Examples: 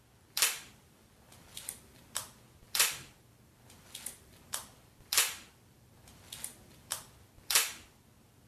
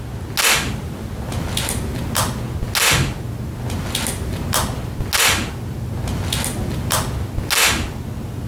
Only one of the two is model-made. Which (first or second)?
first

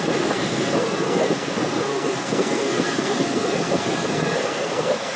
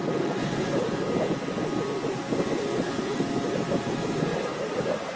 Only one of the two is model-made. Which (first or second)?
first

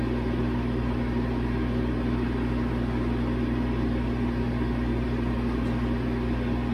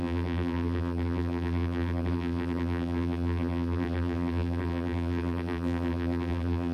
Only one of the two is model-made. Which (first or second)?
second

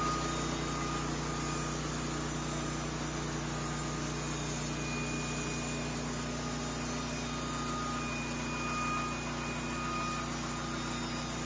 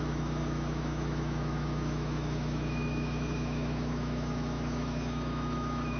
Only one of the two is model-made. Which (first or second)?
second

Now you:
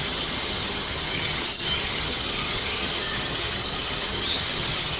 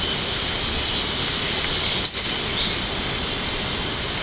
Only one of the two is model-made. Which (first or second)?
first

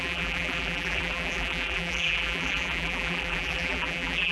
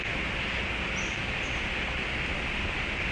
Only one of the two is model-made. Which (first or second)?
first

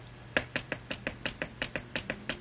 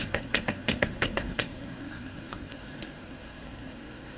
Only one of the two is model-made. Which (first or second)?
second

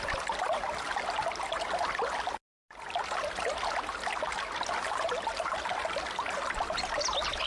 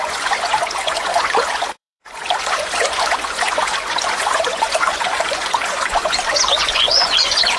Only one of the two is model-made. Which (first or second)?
second